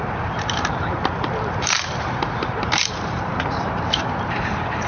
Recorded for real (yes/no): no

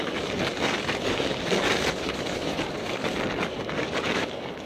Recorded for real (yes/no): no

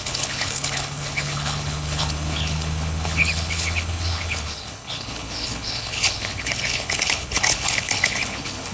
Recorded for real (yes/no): no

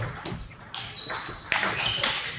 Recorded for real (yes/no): yes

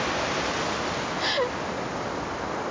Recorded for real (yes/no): yes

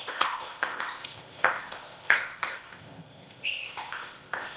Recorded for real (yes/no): no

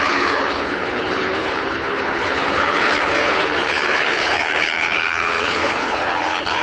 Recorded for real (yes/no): no